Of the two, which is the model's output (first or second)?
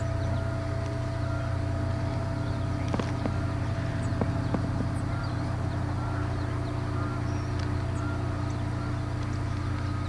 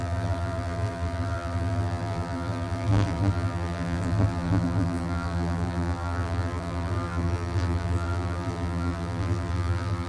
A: second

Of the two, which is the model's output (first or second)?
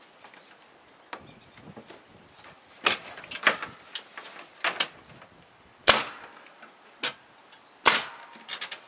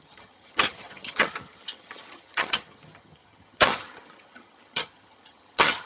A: second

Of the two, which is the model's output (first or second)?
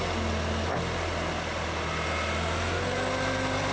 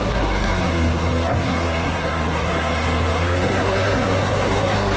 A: second